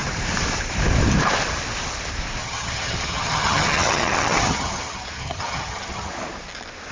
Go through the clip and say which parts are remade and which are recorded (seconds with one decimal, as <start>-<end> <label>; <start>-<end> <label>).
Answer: 0.0-2.4 recorded; 2.4-6.1 remade; 6.1-6.9 recorded